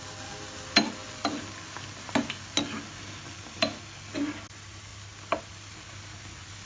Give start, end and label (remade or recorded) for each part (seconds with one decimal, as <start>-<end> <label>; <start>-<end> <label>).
0.0-6.7 recorded